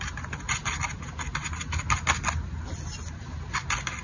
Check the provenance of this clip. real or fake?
real